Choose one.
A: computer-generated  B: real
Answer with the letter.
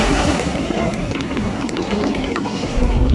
A